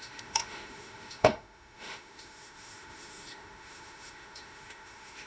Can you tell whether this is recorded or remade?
remade